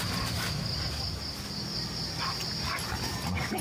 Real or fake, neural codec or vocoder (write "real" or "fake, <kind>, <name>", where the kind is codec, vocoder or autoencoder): real